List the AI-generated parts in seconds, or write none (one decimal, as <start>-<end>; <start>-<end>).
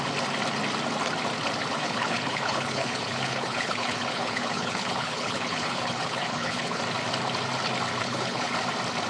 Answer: 1.8-6.8; 8.0-8.5